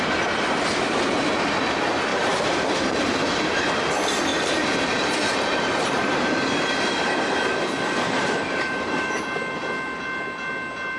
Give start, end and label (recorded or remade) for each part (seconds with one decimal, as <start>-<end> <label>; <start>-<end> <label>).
0.0-2.1 recorded; 2.1-3.8 remade; 3.8-4.3 recorded; 4.3-9.2 remade; 9.2-11.0 recorded